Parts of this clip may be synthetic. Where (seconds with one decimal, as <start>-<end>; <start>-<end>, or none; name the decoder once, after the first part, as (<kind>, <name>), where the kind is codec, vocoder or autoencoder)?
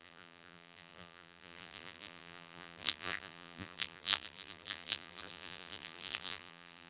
0.0-6.9 (vocoder, BigVGAN v2)